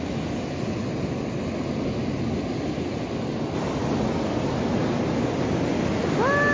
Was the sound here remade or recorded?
recorded